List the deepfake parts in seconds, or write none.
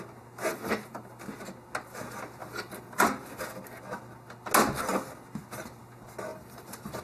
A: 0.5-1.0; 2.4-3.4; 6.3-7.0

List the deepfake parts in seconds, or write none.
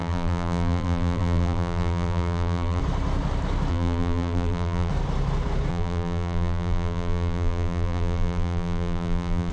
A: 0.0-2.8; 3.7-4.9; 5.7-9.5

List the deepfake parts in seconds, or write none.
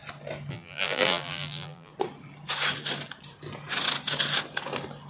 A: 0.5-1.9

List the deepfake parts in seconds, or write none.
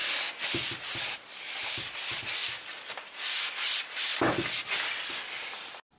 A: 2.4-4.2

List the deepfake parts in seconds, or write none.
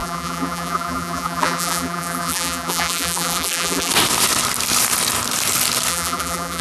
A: 0.0-3.9; 5.9-6.6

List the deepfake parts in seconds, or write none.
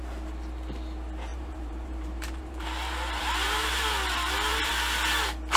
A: 1.3-4.7